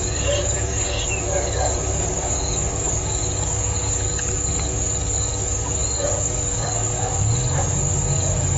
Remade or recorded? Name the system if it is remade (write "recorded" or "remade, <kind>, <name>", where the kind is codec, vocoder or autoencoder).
remade, codec, DAC